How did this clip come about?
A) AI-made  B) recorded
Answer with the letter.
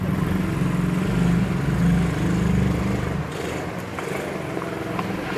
B